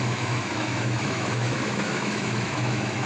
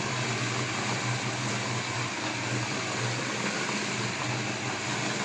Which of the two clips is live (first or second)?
second